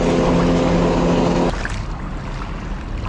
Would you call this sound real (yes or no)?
yes